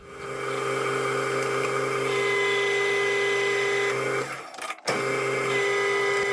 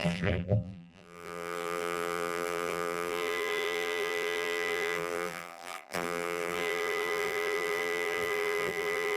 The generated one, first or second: second